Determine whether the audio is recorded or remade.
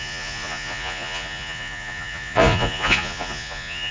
remade